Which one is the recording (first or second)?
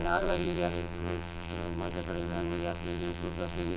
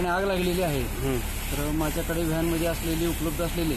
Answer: second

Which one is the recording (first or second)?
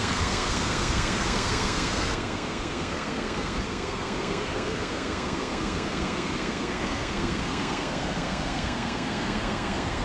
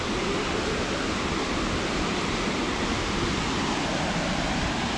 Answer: second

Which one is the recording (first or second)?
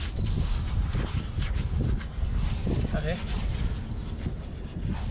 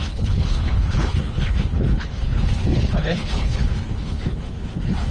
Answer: first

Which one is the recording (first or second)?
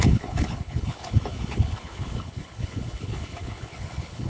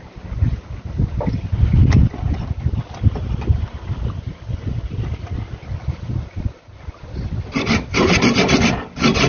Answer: second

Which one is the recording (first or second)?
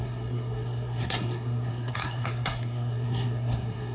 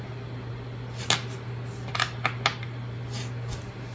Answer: second